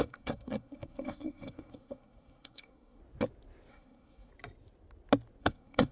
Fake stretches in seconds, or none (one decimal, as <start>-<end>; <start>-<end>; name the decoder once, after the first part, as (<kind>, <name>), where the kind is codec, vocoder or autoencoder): 0.0-3.0 (codec, SNAC); 3.7-4.3; 5.4-5.9

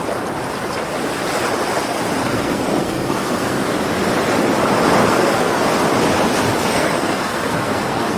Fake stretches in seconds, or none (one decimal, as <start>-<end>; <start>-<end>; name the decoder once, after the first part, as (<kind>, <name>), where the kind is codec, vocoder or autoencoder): 2.2-3.6 (codec, SNAC); 5.0-5.7; 6.7-8.2

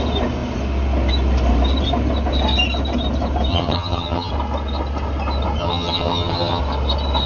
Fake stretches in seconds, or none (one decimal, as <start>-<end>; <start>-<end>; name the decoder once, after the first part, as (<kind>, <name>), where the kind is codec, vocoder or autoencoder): 3.5-4.3 (vocoder, HiFi-GAN); 5.6-6.6

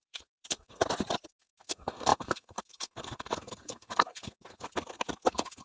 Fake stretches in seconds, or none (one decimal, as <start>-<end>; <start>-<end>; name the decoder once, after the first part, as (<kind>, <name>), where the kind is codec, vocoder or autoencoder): 0.0-0.8 (codec, SNAC); 1.3-5.6

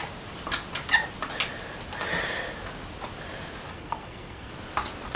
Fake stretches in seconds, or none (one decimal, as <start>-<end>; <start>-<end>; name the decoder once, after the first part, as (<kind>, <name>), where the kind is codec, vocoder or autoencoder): 3.7-4.5 (codec, SNAC)